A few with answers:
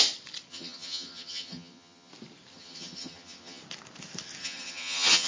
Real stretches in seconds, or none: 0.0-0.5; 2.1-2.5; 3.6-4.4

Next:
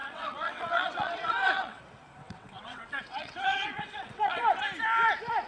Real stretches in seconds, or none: 1.8-2.2; 4.6-5.5

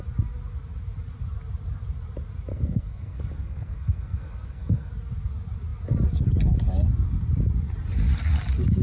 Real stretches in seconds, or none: 0.0-2.5; 4.9-8.8

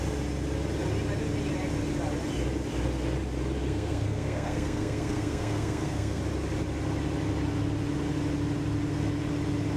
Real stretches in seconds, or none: 0.0-3.6; 6.2-9.8

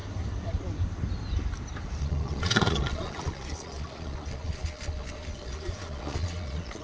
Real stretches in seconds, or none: 0.0-2.0

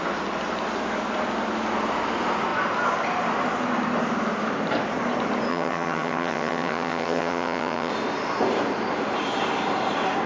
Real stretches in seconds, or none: 0.0-5.5; 7.9-10.3

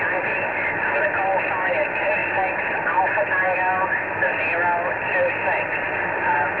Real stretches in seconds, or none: 0.0-6.6